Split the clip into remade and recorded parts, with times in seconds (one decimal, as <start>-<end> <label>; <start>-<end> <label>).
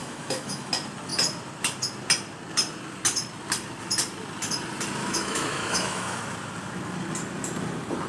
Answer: 0.0-0.7 remade; 0.7-5.0 recorded; 5.0-6.2 remade; 6.2-8.1 recorded